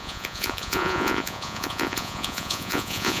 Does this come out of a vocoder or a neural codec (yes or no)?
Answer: yes